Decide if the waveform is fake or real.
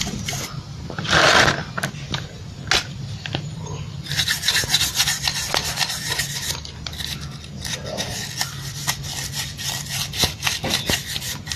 real